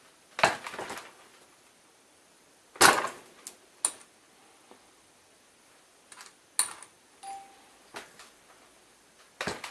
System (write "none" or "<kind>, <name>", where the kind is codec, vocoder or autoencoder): none